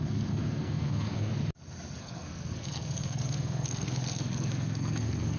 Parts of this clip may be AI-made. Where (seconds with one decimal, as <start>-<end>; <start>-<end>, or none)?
0.0-1.3; 2.0-5.4